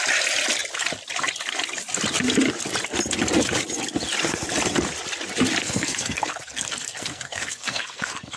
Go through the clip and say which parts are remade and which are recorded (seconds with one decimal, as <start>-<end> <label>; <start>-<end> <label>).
0.0-5.6 recorded; 5.6-8.4 remade